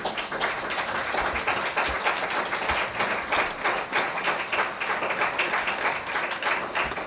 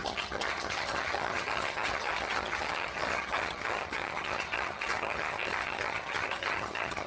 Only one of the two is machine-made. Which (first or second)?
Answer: second